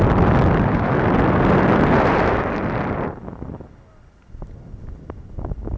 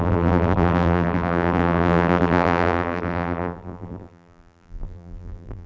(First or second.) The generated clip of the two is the second